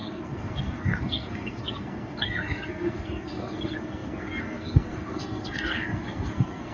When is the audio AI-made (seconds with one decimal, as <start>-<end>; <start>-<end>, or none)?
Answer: 0.0-6.7